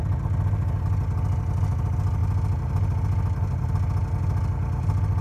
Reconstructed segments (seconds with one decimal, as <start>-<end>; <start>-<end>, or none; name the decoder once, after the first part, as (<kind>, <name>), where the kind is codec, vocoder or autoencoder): none